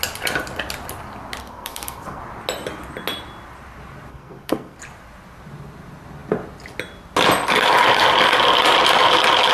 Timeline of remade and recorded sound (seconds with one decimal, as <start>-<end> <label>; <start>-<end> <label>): 0.0-1.4 recorded; 1.4-2.2 remade; 2.2-4.1 recorded; 4.1-4.8 remade; 4.8-9.5 recorded